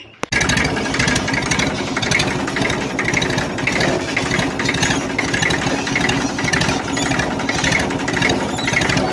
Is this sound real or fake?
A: real